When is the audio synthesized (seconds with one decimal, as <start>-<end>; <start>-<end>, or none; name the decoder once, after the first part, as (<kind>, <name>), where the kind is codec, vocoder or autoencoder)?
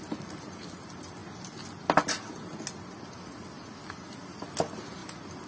5.0-5.5 (vocoder, BigVGAN v2)